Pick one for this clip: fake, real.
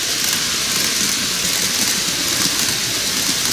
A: real